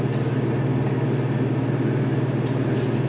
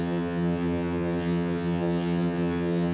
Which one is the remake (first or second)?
second